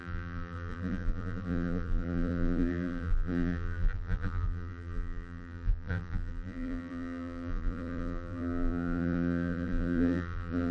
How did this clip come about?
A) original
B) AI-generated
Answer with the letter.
B